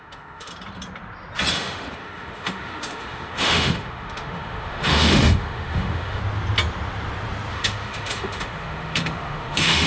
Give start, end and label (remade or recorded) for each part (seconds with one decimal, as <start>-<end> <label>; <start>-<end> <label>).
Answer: 0.0-0.5 remade; 0.5-1.5 recorded; 1.5-6.2 remade; 6.2-7.5 recorded; 7.5-9.9 remade